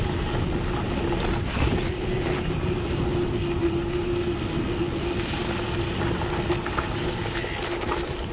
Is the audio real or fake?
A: real